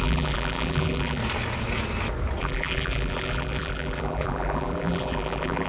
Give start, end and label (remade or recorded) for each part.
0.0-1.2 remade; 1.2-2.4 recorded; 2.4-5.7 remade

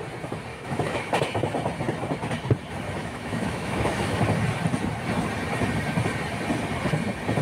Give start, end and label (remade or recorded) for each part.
0.0-0.5 recorded; 0.5-1.1 remade; 1.1-3.0 recorded; 3.0-4.2 remade; 4.2-7.4 recorded

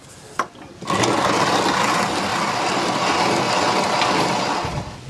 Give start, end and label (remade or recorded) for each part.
0.0-2.3 remade; 2.3-4.1 recorded; 4.1-5.1 remade

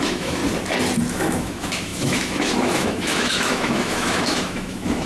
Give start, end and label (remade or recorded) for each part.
0.0-0.4 remade; 0.4-1.1 recorded; 1.1-5.1 remade

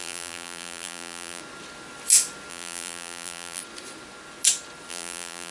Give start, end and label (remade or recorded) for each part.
0.0-1.4 remade; 1.4-2.5 recorded; 2.5-3.6 remade; 3.6-4.9 recorded; 4.9-5.5 remade

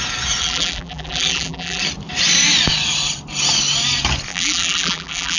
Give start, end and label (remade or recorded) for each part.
0.0-0.4 recorded; 0.4-1.8 remade; 1.8-4.3 recorded; 4.3-5.4 remade